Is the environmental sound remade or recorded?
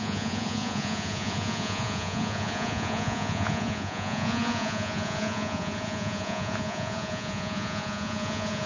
remade